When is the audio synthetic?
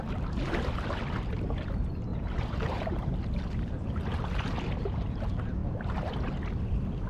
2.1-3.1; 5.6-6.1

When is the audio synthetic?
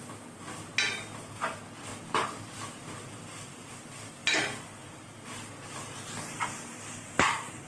1.9-3.7; 4.2-7.7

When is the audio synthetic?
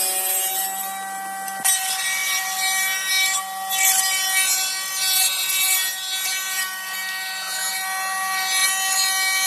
2.2-3.1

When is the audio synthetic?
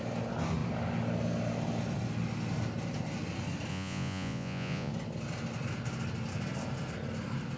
3.7-4.9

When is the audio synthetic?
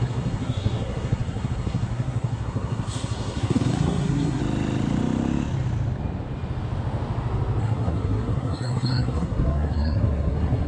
0.0-4.4; 7.6-10.7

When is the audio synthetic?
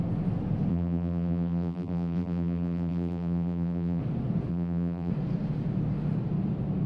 0.7-4.0; 4.5-5.1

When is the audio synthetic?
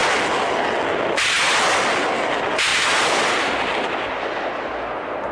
2.7-3.6